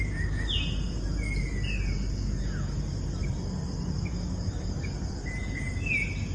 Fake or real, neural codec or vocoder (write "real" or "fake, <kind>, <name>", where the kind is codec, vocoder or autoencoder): real